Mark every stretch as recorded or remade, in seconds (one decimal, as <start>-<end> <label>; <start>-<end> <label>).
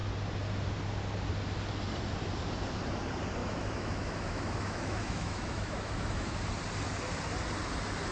0.0-3.4 recorded; 3.4-6.4 remade; 6.4-8.1 recorded